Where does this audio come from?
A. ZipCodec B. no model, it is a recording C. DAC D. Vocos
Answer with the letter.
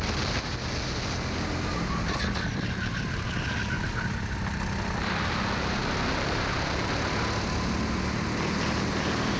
B